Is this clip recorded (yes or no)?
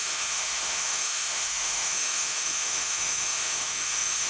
no